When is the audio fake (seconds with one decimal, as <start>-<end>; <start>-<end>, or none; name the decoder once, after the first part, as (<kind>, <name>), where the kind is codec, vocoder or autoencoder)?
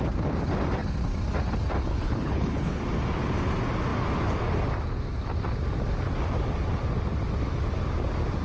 1.9-2.8 (codec, HILCodec)